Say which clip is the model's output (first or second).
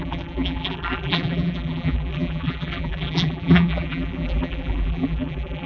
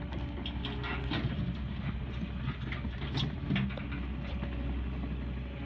first